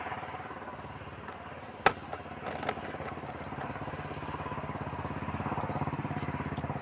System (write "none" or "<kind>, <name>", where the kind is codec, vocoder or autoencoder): none